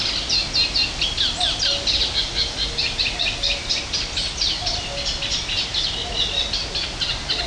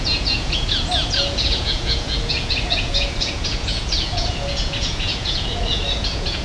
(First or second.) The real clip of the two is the first